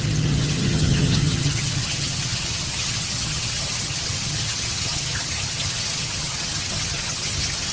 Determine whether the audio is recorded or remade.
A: remade